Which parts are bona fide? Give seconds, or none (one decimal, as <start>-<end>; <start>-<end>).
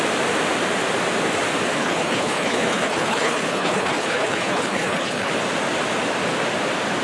0.0-1.8; 5.3-7.0